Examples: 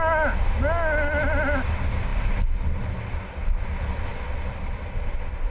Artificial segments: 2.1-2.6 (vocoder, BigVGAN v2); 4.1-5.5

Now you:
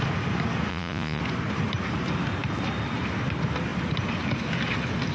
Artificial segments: 0.7-1.2 (vocoder, Vocos)

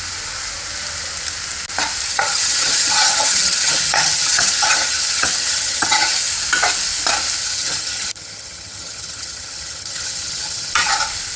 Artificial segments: 2.1-6.3 (vocoder, HiFi-GAN); 7.4-10.9

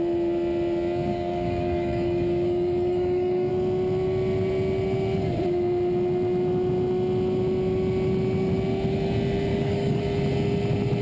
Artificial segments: 1.1-3.5 (codec, DAC); 9.5-10.0

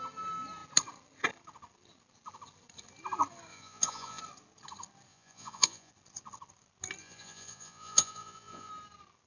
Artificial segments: 3.5-4.2 (vocoder, Vocos); 5.1-5.9; 7.0-8.7